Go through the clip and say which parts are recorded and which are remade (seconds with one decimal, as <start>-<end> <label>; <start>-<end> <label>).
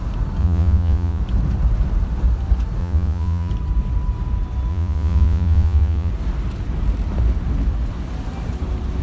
0.0-0.4 recorded; 0.4-1.2 remade; 1.2-2.8 recorded; 2.8-3.5 remade; 3.5-4.7 recorded; 4.7-6.1 remade; 6.1-9.0 recorded